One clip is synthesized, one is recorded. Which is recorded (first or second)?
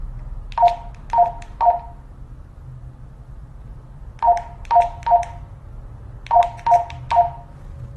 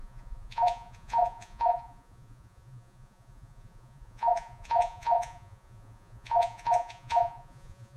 first